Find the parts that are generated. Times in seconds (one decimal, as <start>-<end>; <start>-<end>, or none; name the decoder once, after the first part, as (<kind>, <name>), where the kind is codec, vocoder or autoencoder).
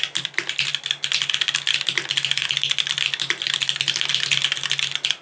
none